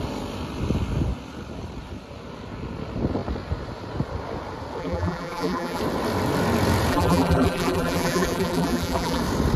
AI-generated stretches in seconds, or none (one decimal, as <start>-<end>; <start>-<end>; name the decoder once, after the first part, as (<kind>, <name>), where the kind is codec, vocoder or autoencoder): 4.8-5.8 (vocoder, BigVGAN v2); 6.9-9.2